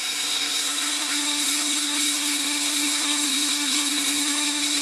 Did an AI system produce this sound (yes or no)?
yes